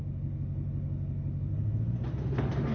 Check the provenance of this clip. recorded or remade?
recorded